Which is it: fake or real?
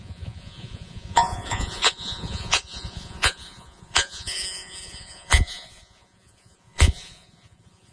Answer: fake